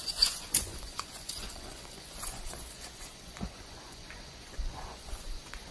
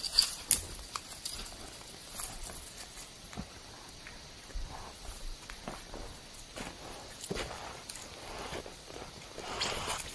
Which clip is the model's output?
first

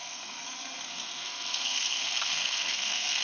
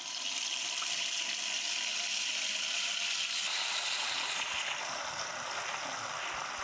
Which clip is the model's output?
first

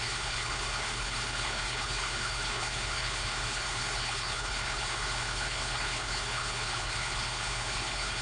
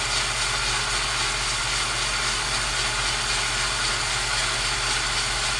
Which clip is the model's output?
first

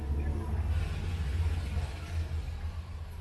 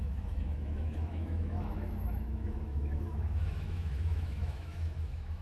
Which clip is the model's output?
second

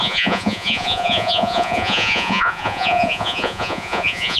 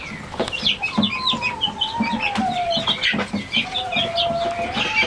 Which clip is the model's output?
first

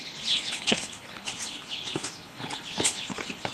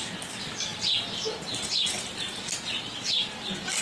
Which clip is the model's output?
first